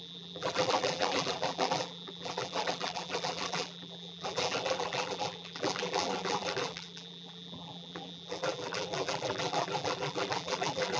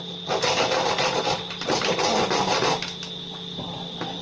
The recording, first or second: second